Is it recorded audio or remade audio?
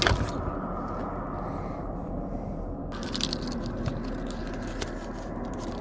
recorded